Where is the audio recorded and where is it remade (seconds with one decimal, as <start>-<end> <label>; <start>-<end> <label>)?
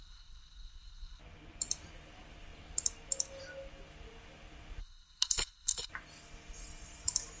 0.0-1.2 remade; 1.2-4.8 recorded; 4.8-5.9 remade; 5.9-7.4 recorded